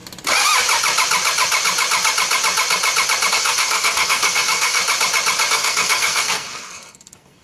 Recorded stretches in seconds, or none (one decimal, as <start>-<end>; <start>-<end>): 0.0-3.3; 4.8-5.5